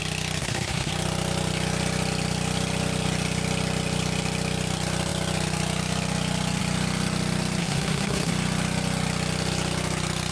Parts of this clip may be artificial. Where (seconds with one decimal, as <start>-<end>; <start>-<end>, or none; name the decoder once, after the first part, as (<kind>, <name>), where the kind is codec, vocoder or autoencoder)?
0.4-0.9 (codec, SNAC); 7.6-8.3